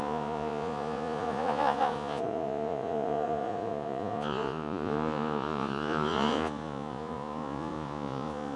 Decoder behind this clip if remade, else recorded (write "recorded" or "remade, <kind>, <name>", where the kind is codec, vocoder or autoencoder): remade, vocoder, Vocos